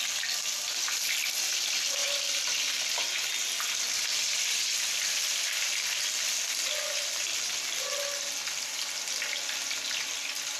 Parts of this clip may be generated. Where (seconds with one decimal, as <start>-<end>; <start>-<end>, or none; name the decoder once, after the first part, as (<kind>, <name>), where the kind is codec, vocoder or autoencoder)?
2.0-3.0 (vocoder, BigVGAN v2)